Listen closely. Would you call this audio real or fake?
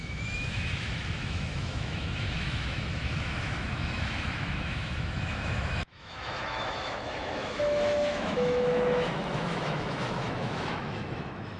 fake